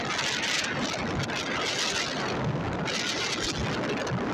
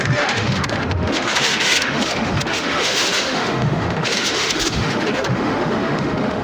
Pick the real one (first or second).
first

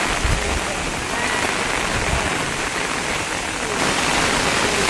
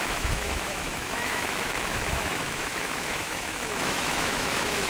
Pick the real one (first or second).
first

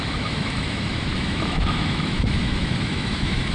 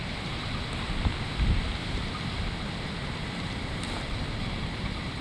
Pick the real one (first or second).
second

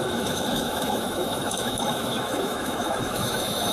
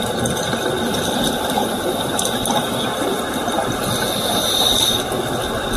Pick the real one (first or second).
second